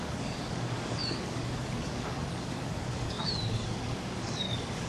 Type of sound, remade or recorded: remade